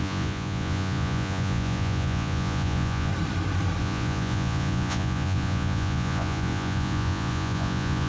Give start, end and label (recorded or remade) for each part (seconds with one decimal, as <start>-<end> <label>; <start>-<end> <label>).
0.0-3.1 remade; 3.1-3.8 recorded; 3.8-8.1 remade